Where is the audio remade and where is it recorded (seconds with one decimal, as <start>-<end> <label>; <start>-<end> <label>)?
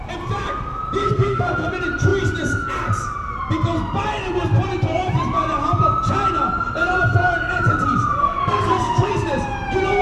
0.0-1.0 recorded; 1.0-1.7 remade; 1.7-8.2 recorded; 8.2-9.1 remade; 9.1-10.0 recorded